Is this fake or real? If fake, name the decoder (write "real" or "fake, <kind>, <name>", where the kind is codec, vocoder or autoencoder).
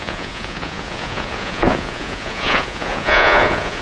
fake, vocoder, Vocos